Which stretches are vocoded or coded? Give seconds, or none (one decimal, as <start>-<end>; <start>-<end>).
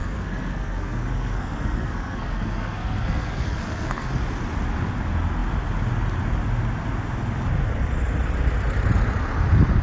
0.0-4.1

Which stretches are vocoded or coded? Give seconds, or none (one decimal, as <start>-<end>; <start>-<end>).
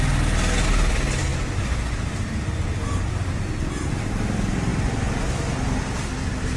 none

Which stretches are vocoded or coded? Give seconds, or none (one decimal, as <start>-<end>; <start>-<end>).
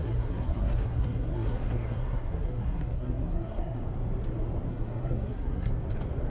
0.0-3.8; 4.7-5.7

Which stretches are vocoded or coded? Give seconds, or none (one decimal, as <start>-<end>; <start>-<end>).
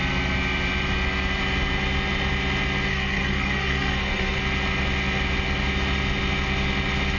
2.9-4.4